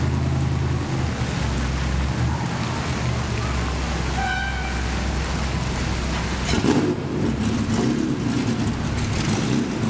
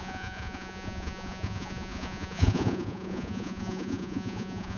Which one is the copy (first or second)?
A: second